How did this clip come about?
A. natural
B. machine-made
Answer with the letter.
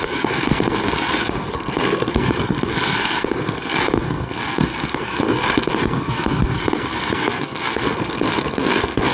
B